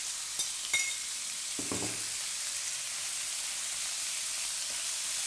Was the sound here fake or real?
real